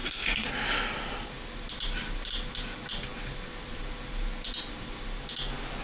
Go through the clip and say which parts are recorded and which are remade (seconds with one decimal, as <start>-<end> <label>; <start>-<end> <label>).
0.0-0.5 remade; 0.5-5.8 recorded